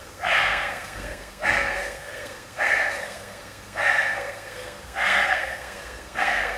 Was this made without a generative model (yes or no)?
no